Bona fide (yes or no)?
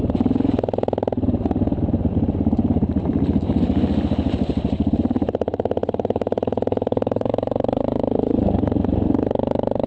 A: no